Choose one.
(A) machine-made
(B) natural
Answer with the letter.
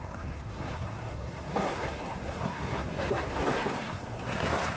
A